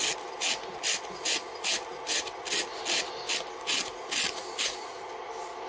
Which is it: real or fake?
real